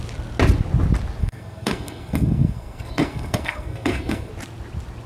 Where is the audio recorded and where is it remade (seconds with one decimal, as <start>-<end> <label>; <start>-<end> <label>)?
0.0-1.2 recorded; 1.2-4.3 remade; 4.3-5.1 recorded